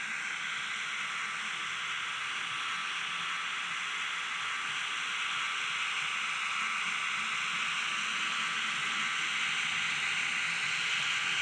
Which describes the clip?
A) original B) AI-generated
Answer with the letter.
A